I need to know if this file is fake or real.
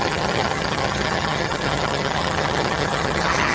fake